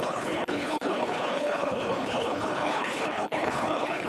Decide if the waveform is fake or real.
fake